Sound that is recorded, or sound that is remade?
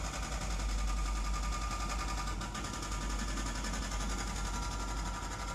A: recorded